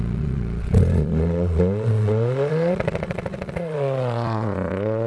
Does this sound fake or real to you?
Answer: fake